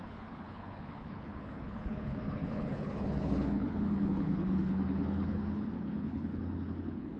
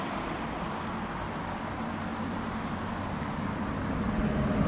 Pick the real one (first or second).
second